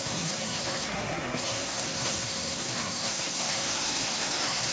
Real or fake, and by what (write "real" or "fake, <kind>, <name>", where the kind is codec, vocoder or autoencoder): fake, codec, SNAC